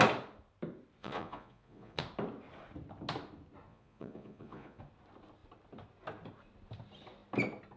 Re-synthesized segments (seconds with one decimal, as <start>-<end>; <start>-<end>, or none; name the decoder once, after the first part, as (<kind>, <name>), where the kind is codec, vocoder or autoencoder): 1.0-2.0 (vocoder, Vocos); 3.7-4.8